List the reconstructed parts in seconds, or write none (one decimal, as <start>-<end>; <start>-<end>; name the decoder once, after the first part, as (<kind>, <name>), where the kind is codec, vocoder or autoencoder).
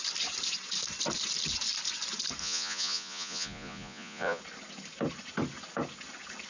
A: 2.4-4.4 (vocoder, Vocos)